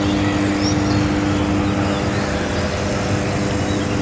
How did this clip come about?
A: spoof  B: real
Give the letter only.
B